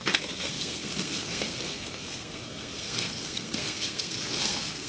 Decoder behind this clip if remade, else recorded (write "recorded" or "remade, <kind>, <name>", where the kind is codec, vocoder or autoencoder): remade, codec, SNAC